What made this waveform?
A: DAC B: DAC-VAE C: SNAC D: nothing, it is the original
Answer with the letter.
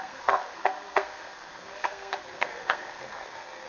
C